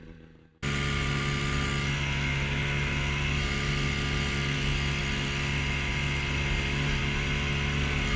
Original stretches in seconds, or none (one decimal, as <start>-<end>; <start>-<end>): 0.0-8.2